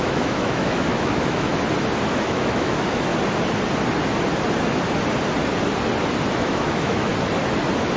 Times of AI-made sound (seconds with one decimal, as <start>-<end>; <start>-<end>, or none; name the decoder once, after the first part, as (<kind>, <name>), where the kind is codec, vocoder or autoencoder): 0.0-1.5 (autoencoder, DAC-VAE); 2.1-3.1; 6.3-7.1

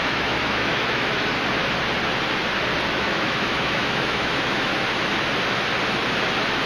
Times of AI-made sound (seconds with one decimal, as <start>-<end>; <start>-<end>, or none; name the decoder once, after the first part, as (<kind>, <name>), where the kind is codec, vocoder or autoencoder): 0.0-1.3 (autoencoder, DAC-VAE); 2.9-4.7

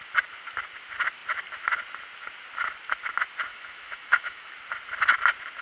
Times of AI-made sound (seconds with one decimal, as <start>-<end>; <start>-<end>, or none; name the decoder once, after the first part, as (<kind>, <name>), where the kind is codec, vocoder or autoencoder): 3.5-4.5 (autoencoder, DAC-VAE)

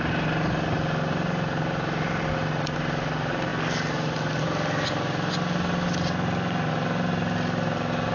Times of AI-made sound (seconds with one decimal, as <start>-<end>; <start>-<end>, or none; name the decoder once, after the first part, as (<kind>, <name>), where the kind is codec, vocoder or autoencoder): none